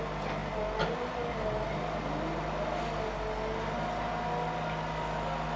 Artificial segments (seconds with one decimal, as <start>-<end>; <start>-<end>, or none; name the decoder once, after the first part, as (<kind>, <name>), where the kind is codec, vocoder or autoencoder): none